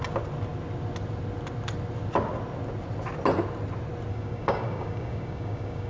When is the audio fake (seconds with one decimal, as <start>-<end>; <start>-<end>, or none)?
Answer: 4.1-5.9